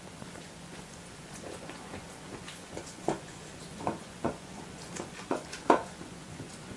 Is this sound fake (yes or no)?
yes